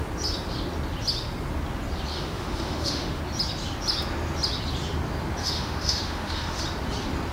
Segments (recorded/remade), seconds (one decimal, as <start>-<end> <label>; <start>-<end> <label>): 0.0-2.1 recorded; 2.1-3.2 remade; 3.2-5.4 recorded; 5.4-6.6 remade; 6.6-7.3 recorded